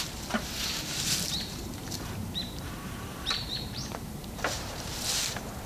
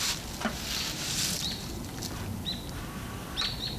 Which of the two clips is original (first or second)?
second